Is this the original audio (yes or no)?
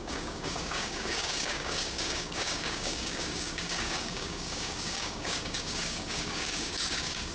no